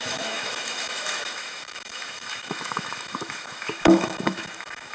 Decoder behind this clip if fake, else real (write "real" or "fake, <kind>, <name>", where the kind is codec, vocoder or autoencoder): fake, autoencoder, DAC-VAE